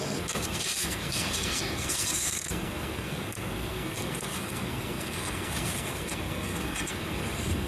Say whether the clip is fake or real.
fake